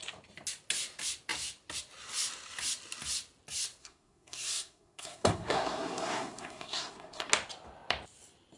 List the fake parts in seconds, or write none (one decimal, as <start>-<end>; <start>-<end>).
3.8-7.3